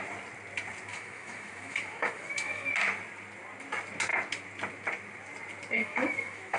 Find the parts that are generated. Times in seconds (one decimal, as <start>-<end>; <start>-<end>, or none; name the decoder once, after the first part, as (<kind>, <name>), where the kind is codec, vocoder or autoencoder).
0.9-2.7 (autoencoder, DAC-VAE); 5.8-6.6